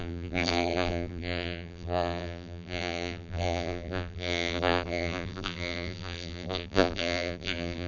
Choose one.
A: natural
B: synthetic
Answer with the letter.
B